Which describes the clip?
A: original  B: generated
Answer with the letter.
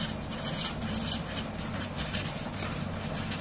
A